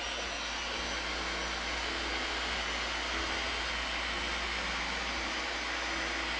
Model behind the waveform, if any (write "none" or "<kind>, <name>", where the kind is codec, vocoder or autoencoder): none